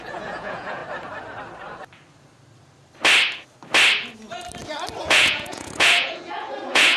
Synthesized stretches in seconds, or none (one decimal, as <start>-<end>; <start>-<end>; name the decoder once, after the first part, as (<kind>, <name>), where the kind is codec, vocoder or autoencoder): 0.0-0.8 (vocoder, Vocos); 5.0-7.0